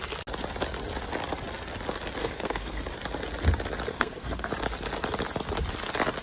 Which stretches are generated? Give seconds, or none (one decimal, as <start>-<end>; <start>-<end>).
2.2-2.8; 3.9-4.5